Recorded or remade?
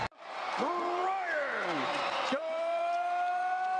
remade